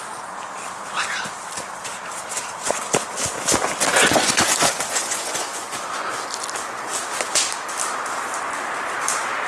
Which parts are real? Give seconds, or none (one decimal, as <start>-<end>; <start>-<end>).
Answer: 0.0-3.9; 6.1-9.5